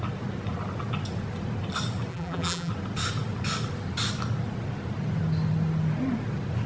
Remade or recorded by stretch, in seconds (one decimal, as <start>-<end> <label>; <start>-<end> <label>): 0.0-2.1 recorded; 2.1-2.7 remade; 2.7-6.7 recorded